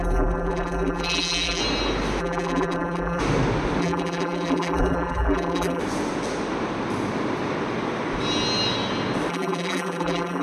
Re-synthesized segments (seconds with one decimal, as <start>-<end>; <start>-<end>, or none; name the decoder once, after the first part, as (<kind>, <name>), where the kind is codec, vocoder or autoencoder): 0.0-1.6 (vocoder, BigVGAN v2); 2.2-3.2; 3.8-5.8; 9.3-10.4